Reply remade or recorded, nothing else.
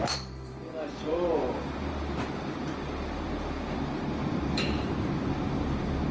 remade